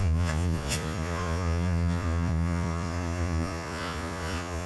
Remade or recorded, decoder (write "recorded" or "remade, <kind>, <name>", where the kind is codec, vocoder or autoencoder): remade, vocoder, Vocos